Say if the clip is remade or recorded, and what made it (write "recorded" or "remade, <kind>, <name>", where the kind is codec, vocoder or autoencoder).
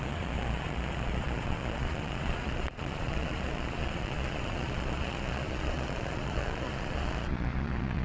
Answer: remade, vocoder, Vocos